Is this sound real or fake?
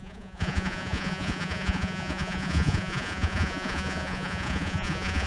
fake